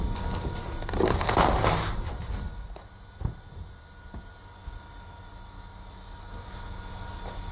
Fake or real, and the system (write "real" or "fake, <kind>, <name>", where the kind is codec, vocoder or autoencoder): real